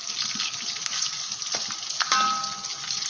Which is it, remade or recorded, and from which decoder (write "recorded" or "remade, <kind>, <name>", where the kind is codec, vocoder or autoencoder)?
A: recorded